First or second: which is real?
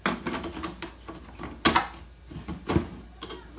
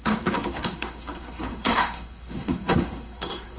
first